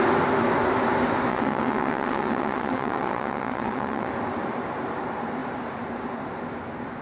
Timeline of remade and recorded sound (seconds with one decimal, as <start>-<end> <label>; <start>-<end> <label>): 0.0-1.3 recorded; 1.3-4.1 remade; 4.1-7.0 recorded